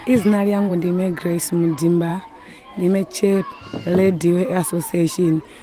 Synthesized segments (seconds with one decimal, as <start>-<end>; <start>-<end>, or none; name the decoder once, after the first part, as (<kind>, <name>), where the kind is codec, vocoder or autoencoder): 0.0-0.7 (autoencoder, DAC-VAE); 2.1-5.1